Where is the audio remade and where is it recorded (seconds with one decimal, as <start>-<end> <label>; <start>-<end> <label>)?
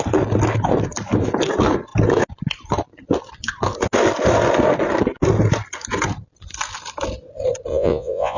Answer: 0.0-7.7 recorded; 7.7-8.4 remade